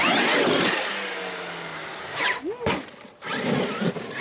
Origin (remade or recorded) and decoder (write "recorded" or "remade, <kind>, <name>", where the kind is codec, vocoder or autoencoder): recorded